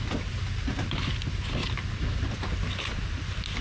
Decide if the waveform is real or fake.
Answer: real